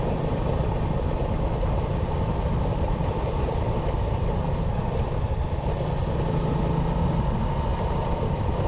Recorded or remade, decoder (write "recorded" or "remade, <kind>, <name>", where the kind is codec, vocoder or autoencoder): recorded